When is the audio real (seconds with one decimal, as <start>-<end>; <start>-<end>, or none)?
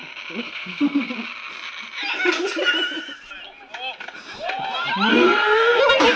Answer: 0.0-0.4; 1.1-5.1; 5.8-6.2